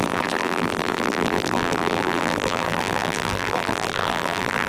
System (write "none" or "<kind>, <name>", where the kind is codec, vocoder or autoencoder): vocoder, BigVGAN v2